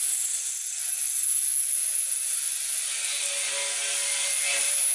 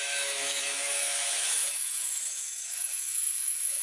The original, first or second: first